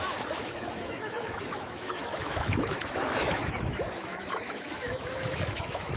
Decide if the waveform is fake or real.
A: fake